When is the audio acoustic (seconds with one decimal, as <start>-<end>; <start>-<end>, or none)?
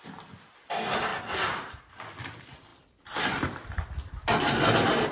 0.0-5.1